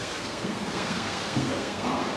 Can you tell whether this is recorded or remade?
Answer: remade